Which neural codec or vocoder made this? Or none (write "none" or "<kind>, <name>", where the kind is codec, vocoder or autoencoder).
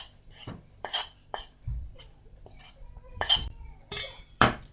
vocoder, BigVGAN v2